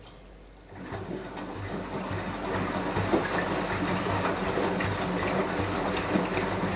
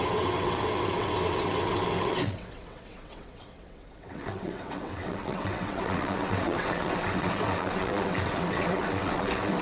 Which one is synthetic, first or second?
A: second